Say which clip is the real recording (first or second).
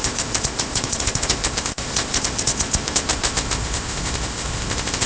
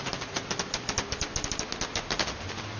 second